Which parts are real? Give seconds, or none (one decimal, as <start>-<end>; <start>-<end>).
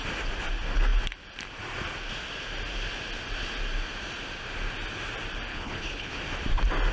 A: 0.0-5.5; 6.2-6.9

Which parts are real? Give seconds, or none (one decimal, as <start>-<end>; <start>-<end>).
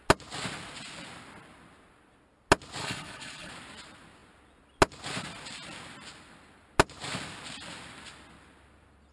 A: 0.0-2.8; 3.5-9.1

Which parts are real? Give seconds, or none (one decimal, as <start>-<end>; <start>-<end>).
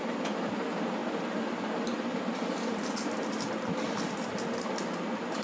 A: 0.0-5.4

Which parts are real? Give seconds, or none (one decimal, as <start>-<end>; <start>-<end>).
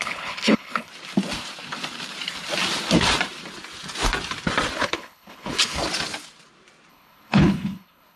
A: 0.9-4.8; 5.8-6.9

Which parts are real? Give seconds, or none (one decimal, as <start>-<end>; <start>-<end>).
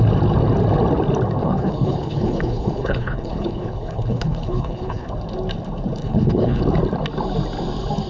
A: 0.0-1.4; 5.1-6.0; 6.6-8.1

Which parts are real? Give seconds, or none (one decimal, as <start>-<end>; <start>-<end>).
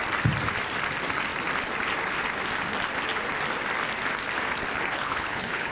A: 0.0-4.9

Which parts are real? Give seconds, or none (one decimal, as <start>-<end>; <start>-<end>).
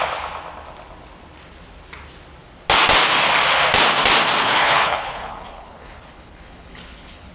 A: 0.0-4.4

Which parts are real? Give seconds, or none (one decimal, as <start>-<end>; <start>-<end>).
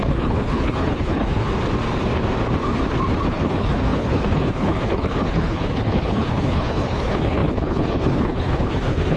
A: 1.5-3.3